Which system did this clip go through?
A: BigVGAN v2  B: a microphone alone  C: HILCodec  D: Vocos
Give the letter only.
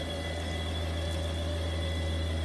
B